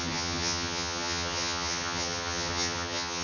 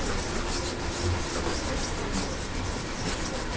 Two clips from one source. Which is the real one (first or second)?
second